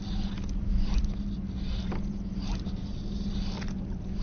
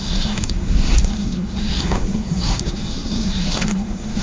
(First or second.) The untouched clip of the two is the first